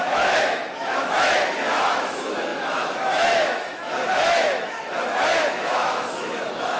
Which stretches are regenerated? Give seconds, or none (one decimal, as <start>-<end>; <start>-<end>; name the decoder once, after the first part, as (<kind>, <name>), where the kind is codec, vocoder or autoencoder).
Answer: 0.0-6.8 (autoencoder, DAC-VAE)